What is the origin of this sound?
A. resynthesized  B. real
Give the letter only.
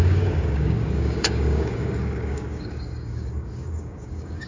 A